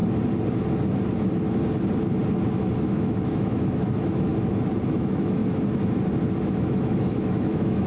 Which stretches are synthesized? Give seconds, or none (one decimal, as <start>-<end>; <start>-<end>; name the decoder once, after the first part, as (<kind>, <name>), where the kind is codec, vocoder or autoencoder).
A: 2.8-4.3 (autoencoder, DAC-VAE); 4.9-5.4; 6.4-7.9